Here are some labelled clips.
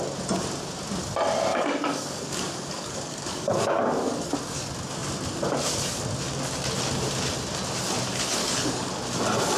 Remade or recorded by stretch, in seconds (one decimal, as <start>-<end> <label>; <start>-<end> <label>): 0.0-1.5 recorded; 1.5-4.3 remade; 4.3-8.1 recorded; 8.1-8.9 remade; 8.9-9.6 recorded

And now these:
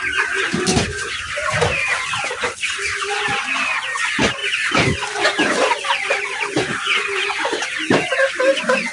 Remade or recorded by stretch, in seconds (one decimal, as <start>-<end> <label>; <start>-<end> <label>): 0.0-8.9 recorded

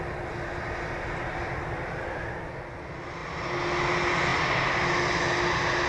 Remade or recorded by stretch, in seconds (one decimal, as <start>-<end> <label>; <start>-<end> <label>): 0.0-5.9 recorded